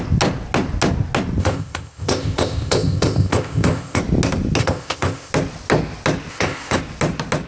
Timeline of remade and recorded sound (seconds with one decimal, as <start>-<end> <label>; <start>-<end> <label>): 0.0-1.4 recorded; 1.4-4.0 remade; 4.0-4.6 recorded; 4.6-5.3 remade; 5.3-6.3 recorded; 6.3-6.8 remade; 6.8-7.5 recorded